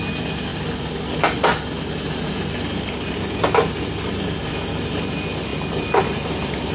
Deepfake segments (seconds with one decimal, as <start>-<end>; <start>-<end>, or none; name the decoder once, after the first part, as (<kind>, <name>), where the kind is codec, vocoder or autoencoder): none